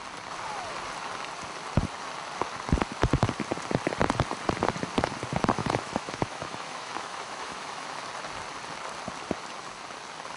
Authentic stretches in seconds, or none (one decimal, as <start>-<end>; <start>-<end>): 0.0-5.6; 8.0-10.4